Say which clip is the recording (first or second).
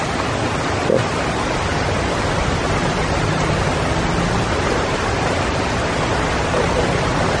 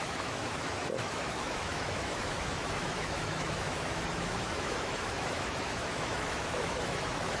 first